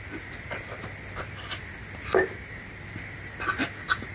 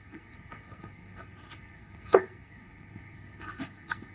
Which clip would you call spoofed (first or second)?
second